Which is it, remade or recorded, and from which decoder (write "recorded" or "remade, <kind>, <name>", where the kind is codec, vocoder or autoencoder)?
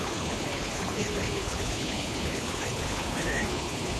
remade, codec, HILCodec